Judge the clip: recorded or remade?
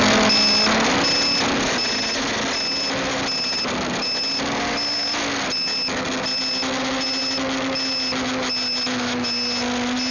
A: recorded